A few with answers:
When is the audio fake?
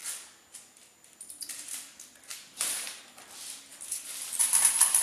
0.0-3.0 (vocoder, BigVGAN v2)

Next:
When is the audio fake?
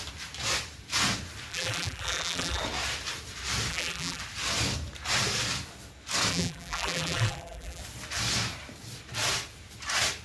1.5-2.6 (vocoder, BigVGAN v2); 3.7-4.2; 6.3-7.8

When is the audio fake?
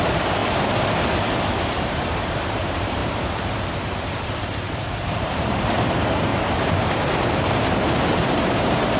0.0-0.4 (vocoder, BigVGAN v2); 1.1-6.3; 7.2-9.0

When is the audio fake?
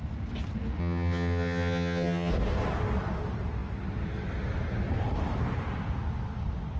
0.8-2.3 (vocoder, HiFi-GAN)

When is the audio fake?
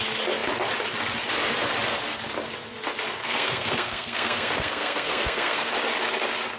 3.2-5.7 (codec, SNAC)